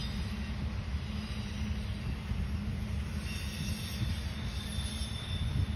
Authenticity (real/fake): real